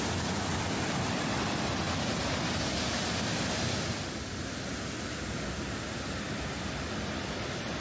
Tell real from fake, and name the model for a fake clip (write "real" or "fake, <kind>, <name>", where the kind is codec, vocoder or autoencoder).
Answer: real